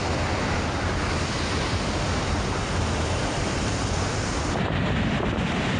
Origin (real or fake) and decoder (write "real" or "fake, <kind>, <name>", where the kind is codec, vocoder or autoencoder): real